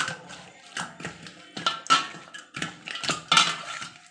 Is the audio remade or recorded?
recorded